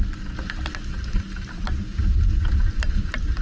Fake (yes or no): no